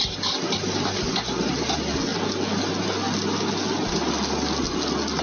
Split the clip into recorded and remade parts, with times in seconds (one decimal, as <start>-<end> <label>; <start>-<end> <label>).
0.0-5.2 recorded